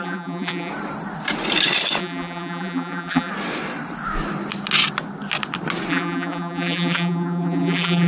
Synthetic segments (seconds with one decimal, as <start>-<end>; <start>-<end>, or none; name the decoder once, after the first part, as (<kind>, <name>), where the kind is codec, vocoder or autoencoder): 0.0-0.7 (vocoder, BigVGAN v2); 2.0-3.3; 5.9-8.1

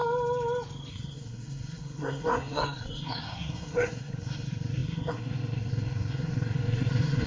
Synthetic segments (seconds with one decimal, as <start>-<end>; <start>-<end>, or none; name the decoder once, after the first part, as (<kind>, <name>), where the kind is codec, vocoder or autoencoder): 0.9-7.3 (codec, SNAC)

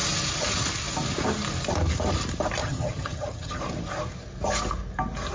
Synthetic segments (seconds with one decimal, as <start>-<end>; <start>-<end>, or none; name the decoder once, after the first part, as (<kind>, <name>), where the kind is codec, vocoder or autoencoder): 2.6-3.6 (vocoder, HiFi-GAN)

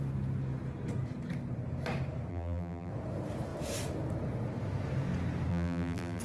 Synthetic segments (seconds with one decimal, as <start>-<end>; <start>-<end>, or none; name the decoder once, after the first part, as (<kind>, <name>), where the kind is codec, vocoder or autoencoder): 2.3-2.9 (vocoder, BigVGAN v2); 5.5-6.2

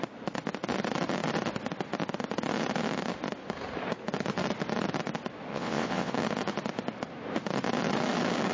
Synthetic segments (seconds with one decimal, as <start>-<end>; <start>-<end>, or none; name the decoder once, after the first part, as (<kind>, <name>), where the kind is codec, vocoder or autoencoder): 5.5-6.1 (vocoder, WaveNeXt)

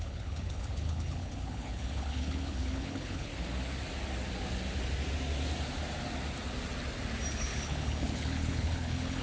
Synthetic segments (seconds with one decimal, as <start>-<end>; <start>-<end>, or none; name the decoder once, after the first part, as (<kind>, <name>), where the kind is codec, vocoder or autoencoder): 0.0-3.3 (codec, HILCodec); 7.3-9.2

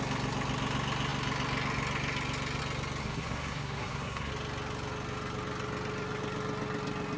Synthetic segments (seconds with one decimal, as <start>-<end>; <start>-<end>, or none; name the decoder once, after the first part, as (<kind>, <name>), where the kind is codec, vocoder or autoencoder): 3.0-4.3 (codec, SNAC)